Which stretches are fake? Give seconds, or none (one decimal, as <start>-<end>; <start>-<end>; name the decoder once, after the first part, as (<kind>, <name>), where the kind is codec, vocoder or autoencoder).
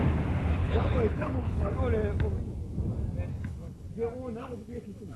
0.6-1.7 (codec, HILCodec); 3.3-3.9; 4.4-5.2